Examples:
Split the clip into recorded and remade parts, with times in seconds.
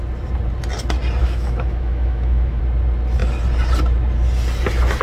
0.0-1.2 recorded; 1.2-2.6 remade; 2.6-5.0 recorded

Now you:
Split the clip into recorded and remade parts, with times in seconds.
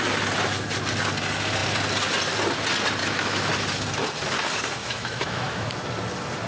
0.0-3.0 recorded; 3.0-3.5 remade; 3.5-4.8 recorded; 4.8-5.7 remade; 5.7-6.5 recorded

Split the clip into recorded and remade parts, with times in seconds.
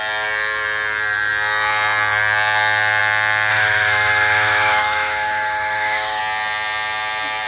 0.0-3.5 recorded; 3.5-6.2 remade; 6.2-7.5 recorded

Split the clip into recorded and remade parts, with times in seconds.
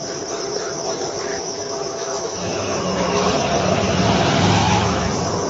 0.0-1.3 recorded; 1.3-3.3 remade; 3.3-4.6 recorded; 4.6-5.1 remade; 5.1-5.5 recorded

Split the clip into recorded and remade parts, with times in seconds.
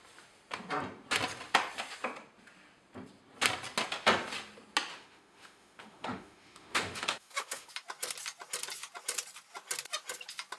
0.0-4.9 recorded; 4.9-7.7 remade; 7.7-10.6 recorded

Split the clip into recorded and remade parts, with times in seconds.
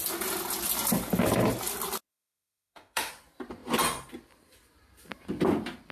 0.0-2.1 recorded; 2.1-3.1 remade; 3.1-5.9 recorded